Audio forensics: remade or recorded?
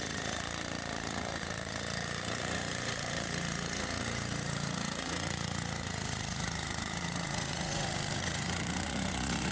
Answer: remade